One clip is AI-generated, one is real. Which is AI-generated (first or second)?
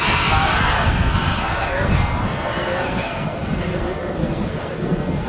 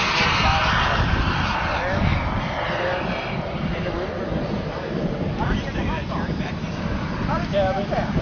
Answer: first